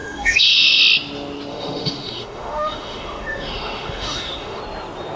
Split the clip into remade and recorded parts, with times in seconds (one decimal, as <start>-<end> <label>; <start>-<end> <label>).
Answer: 0.0-0.8 remade; 0.8-1.5 recorded; 1.5-4.6 remade; 4.6-5.2 recorded